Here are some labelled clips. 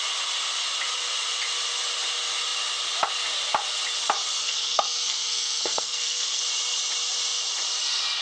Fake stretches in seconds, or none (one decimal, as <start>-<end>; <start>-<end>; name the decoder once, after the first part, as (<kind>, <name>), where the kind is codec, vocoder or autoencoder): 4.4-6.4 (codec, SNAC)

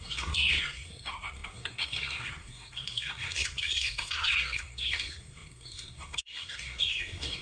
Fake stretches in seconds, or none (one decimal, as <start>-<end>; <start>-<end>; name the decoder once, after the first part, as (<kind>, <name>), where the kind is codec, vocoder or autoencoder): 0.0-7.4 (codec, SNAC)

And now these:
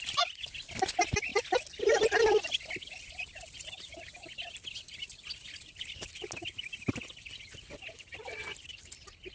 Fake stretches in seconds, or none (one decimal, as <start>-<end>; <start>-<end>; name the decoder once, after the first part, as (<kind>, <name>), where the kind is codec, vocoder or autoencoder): none